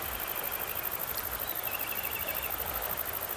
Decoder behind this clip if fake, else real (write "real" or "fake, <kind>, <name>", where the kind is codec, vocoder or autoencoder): real